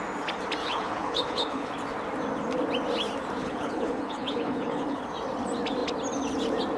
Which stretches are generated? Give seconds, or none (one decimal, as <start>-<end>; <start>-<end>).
0.6-1.7; 3.4-5.0